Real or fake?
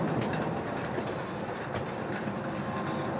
real